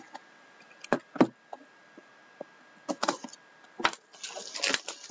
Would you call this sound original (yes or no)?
yes